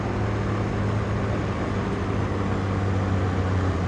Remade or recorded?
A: recorded